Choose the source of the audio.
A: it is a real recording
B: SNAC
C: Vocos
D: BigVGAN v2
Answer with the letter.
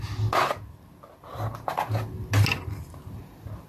A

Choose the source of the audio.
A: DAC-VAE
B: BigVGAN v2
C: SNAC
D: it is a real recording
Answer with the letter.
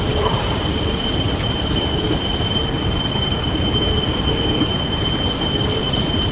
B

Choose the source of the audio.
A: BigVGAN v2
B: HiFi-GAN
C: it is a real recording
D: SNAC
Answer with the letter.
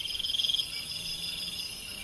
C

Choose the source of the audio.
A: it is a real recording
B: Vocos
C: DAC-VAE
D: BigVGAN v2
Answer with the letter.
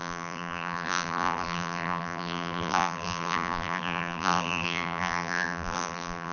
D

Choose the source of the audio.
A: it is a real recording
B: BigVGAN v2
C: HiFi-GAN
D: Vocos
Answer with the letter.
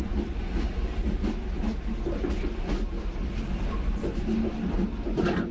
A